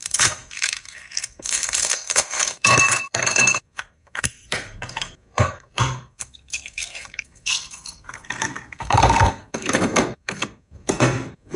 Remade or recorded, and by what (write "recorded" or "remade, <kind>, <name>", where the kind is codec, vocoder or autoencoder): remade, codec, SNAC